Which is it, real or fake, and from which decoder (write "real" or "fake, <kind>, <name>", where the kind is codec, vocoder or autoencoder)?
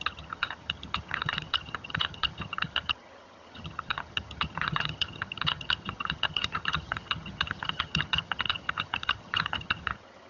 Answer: fake, vocoder, HiFi-GAN